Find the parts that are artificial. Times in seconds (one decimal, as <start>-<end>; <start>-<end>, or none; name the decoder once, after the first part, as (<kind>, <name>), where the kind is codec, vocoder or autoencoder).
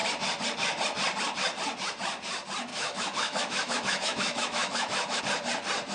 2.7-5.2 (autoencoder, DAC-VAE)